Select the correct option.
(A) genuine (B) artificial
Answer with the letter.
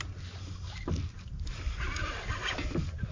A